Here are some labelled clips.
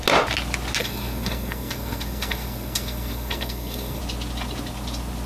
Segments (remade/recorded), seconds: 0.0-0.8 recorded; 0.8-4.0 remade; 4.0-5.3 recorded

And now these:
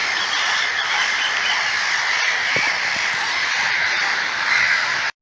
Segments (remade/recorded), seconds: 0.0-5.2 recorded

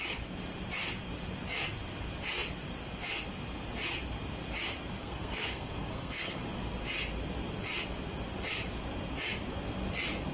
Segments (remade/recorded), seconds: 0.0-5.0 recorded; 5.0-6.4 remade; 6.4-10.3 recorded

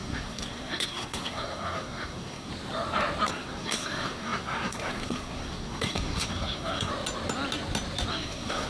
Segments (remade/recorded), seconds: 0.0-2.5 remade; 2.5-3.3 recorded; 3.3-6.9 remade; 6.9-8.1 recorded; 8.1-8.7 remade

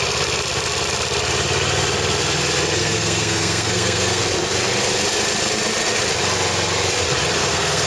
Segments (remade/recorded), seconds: 0.0-2.8 recorded; 2.8-4.2 remade; 4.2-7.4 recorded; 7.4-7.9 remade